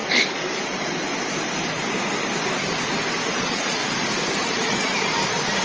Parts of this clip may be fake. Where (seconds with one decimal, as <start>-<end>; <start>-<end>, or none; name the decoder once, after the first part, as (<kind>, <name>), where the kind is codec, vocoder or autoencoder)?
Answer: 3.4-3.8 (vocoder, Vocos); 4.4-4.9